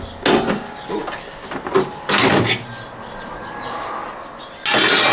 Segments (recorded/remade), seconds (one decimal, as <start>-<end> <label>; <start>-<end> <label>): 0.0-5.1 recorded